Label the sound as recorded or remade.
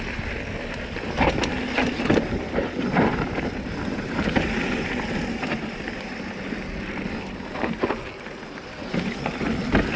recorded